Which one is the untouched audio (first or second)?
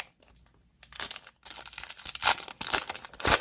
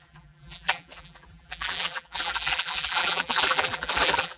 first